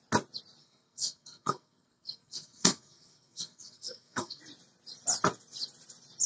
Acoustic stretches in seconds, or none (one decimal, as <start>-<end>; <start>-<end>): 0.0-0.6; 4.4-6.3

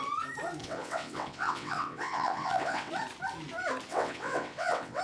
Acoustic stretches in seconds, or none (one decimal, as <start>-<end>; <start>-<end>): 0.0-0.6; 2.9-3.9

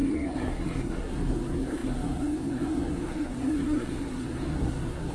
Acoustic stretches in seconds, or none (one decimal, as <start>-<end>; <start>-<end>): none

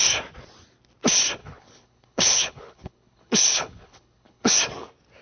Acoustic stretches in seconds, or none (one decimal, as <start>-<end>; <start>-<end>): 0.0-1.4; 4.5-5.2

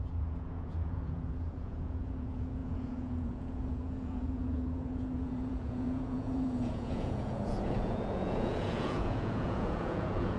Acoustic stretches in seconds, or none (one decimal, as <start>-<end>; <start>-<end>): none